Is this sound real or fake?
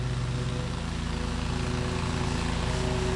real